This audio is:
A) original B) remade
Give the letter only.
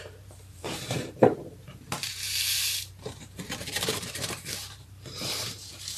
B